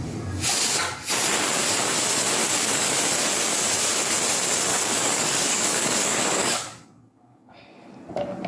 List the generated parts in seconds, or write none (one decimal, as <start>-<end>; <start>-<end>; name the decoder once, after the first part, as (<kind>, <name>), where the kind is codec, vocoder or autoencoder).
2.4-2.9 (codec, DAC); 4.7-7.5